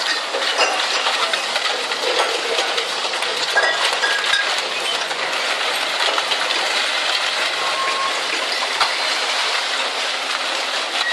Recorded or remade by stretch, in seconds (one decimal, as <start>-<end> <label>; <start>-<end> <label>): 0.0-3.3 recorded; 3.3-4.1 remade; 4.1-4.9 recorded; 4.9-5.6 remade; 5.6-11.1 recorded